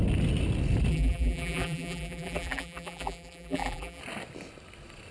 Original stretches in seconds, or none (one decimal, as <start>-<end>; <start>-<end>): 0.0-0.9; 4.0-5.1